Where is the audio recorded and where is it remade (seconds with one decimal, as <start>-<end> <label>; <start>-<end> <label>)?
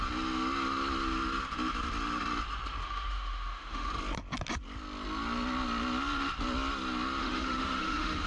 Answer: 0.0-2.8 recorded; 2.8-3.9 remade; 3.9-7.2 recorded; 7.2-8.3 remade